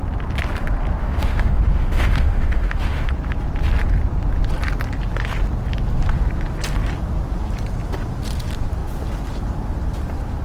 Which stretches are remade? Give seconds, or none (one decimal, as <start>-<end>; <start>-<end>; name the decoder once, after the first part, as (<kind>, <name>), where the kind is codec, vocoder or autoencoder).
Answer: 1.0-3.1 (autoencoder, DAC-VAE)